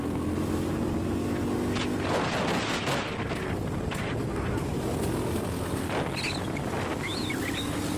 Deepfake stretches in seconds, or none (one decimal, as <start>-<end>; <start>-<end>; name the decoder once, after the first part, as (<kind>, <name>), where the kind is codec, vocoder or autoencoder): none